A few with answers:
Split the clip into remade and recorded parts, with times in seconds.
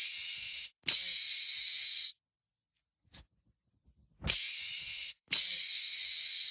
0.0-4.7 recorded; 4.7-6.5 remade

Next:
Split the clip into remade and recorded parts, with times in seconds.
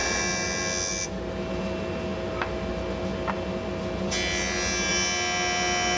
0.0-6.0 recorded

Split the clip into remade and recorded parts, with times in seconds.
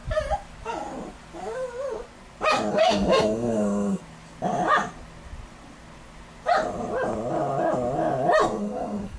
0.0-2.7 recorded; 2.7-4.0 remade; 4.0-8.4 recorded; 8.4-9.2 remade